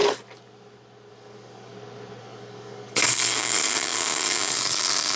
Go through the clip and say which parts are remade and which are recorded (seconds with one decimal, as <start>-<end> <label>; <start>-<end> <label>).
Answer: 0.0-1.1 recorded; 1.1-1.7 remade; 1.7-2.2 recorded; 2.2-5.2 remade